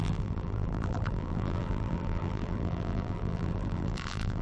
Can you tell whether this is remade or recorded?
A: remade